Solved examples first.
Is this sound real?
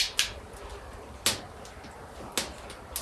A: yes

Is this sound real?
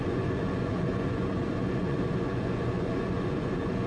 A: no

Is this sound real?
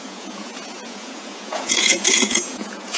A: no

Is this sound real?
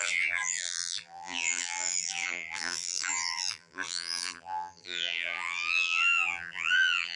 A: no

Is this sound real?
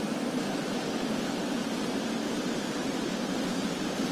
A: yes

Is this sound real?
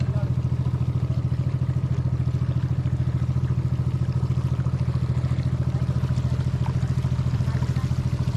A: yes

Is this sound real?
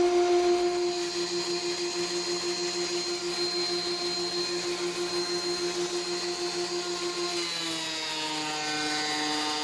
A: yes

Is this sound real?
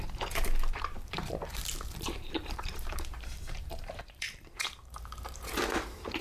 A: no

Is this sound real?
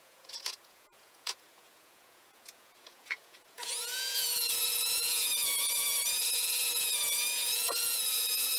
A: no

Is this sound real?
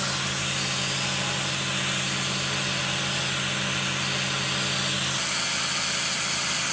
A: yes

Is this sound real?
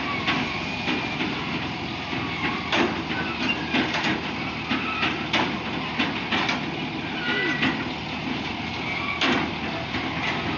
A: yes